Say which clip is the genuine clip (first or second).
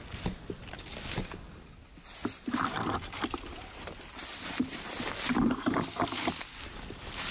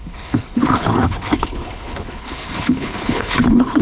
first